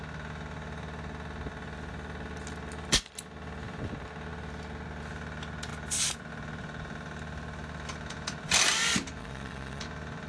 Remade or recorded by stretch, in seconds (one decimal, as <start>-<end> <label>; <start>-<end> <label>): 0.0-9.2 recorded; 9.2-9.8 remade; 9.8-10.3 recorded

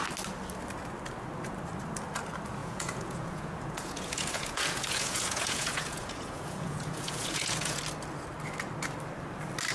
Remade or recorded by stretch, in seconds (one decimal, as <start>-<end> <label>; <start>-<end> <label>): 0.0-2.6 recorded; 2.6-7.8 remade; 7.8-9.7 recorded

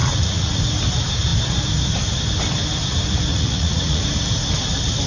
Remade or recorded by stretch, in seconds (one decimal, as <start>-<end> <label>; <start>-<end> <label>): 0.0-0.6 remade; 0.6-3.3 recorded; 3.3-4.0 remade; 4.0-5.1 recorded